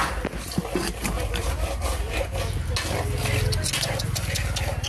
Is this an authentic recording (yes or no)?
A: yes